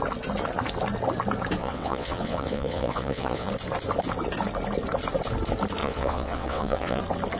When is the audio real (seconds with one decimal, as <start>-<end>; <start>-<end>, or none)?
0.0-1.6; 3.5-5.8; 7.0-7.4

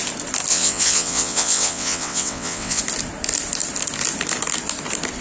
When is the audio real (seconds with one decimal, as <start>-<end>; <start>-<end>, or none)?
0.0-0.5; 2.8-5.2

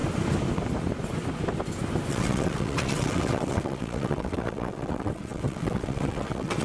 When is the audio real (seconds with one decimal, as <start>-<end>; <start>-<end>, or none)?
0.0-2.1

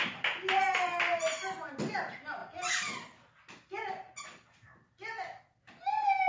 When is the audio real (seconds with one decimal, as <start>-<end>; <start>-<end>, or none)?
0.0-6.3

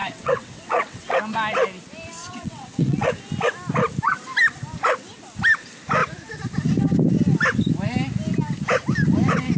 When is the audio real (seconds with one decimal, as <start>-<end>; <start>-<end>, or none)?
1.2-2.2; 3.2-9.6